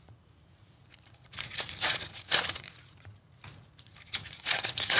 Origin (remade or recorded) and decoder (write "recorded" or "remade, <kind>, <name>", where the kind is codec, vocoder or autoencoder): remade, vocoder, Vocos